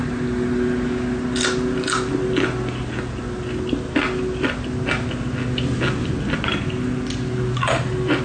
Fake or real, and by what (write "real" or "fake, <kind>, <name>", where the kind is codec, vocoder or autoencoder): real